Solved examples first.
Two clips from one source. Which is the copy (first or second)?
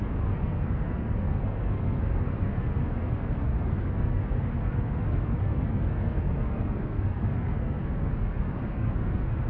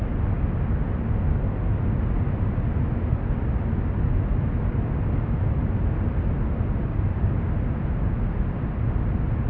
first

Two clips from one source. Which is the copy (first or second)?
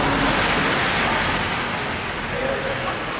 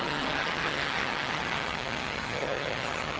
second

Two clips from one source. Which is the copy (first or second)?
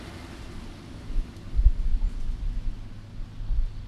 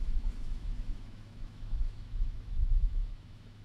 second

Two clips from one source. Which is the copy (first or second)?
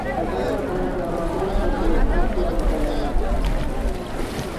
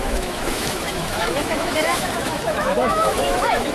second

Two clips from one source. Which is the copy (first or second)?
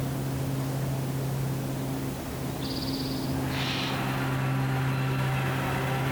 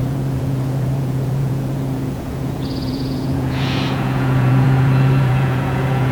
second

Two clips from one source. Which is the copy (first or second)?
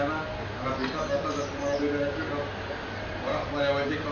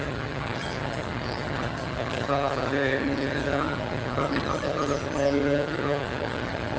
second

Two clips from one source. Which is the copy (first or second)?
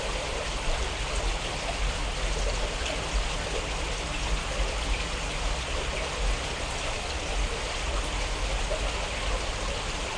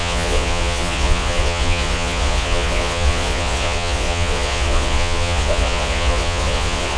second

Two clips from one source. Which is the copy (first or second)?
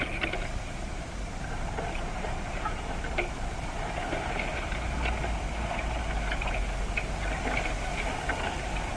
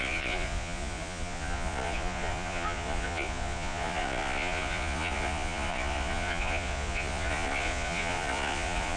second